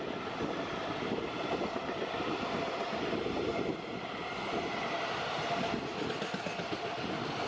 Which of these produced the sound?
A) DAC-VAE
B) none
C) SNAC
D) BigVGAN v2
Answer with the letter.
B